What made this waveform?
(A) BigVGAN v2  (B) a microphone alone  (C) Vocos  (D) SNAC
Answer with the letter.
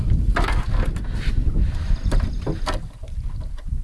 B